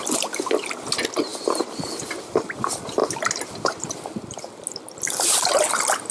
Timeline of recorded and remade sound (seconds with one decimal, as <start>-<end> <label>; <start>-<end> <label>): 0.0-6.1 recorded

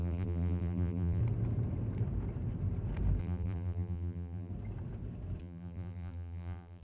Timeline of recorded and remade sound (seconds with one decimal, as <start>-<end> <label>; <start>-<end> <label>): 0.0-1.2 remade; 1.2-3.2 recorded; 3.2-4.5 remade; 4.5-5.4 recorded; 5.4-6.8 remade

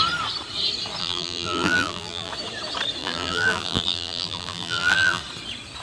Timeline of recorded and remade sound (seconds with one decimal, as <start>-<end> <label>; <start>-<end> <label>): 0.0-1.0 recorded; 1.0-2.3 remade; 2.3-3.0 recorded; 3.0-5.2 remade; 5.2-5.8 recorded

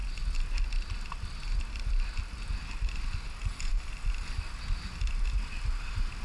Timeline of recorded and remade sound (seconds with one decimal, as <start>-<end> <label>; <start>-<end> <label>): 0.0-6.2 recorded

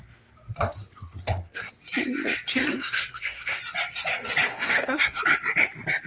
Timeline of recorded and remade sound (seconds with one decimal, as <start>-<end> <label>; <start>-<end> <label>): 0.0-0.8 recorded; 0.8-1.7 remade; 1.7-2.5 recorded; 2.5-3.6 remade; 3.6-4.5 recorded; 4.5-5.2 remade; 5.2-6.1 recorded